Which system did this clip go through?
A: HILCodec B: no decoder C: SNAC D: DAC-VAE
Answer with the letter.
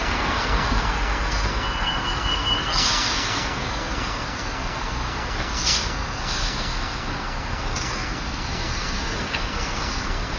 C